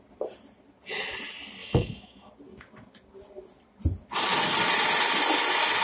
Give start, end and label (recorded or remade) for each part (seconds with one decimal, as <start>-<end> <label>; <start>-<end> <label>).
0.0-1.6 recorded; 1.6-2.3 remade; 2.3-5.8 recorded